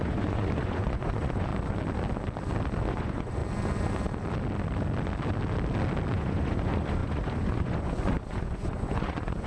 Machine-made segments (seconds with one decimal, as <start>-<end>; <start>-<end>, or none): 0.0-1.5; 2.9-3.4; 6.1-9.5